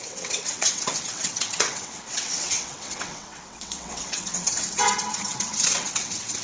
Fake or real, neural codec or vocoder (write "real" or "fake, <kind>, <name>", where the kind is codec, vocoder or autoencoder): fake, vocoder, WaveNeXt